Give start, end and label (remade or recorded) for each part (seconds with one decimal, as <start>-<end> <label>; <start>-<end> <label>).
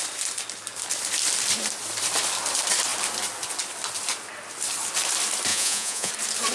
0.0-5.5 recorded; 5.5-6.1 remade; 6.1-6.5 recorded